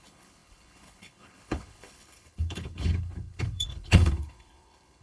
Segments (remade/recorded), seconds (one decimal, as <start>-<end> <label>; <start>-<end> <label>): 0.0-5.0 remade